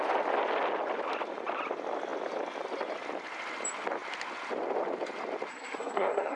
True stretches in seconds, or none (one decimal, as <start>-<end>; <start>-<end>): 0.0-5.5